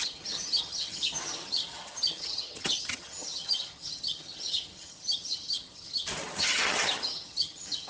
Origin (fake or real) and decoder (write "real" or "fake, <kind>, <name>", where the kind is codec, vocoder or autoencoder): fake, vocoder, HiFi-GAN